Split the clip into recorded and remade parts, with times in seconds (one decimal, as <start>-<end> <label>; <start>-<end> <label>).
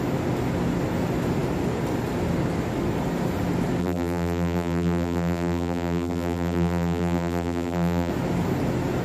0.0-3.8 recorded; 3.8-8.1 remade; 8.1-9.0 recorded